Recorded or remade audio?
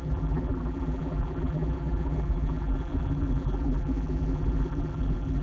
remade